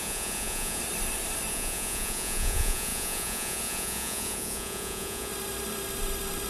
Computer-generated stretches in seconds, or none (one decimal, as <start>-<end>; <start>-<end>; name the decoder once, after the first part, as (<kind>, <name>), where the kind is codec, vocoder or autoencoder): 0.0-0.8 (vocoder, Vocos); 1.5-5.3